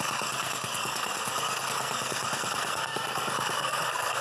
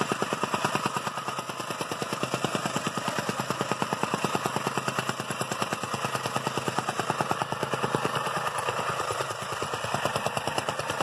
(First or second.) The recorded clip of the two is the second